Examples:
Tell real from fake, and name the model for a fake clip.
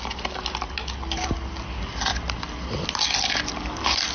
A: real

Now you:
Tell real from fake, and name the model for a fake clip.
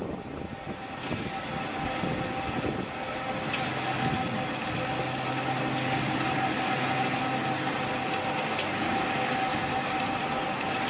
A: real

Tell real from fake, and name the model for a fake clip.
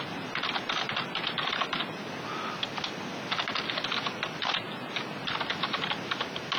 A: real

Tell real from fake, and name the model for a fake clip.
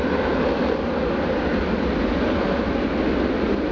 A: real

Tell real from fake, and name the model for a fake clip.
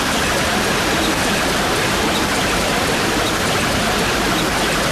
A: real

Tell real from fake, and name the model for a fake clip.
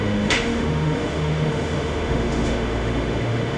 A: fake, autoencoder, DAC-VAE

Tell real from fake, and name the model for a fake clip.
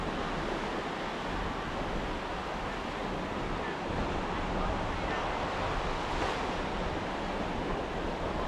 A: real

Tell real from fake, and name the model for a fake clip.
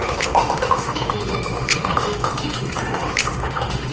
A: fake, autoencoder, DAC-VAE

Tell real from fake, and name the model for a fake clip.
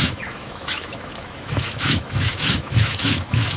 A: fake, autoencoder, DAC-VAE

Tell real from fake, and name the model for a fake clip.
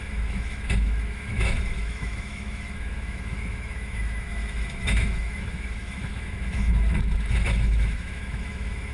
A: fake, autoencoder, DAC-VAE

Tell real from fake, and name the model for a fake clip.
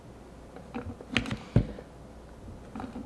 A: real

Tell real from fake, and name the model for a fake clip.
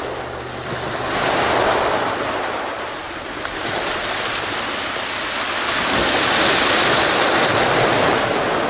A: real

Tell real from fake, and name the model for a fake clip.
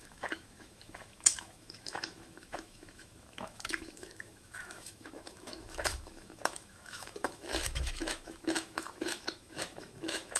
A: fake, autoencoder, DAC-VAE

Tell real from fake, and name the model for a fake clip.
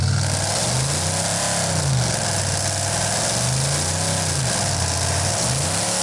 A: real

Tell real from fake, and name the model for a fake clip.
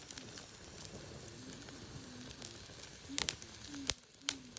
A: real